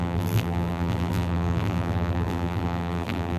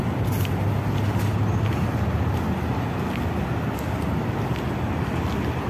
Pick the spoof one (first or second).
first